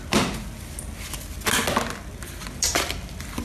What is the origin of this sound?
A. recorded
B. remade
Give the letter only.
A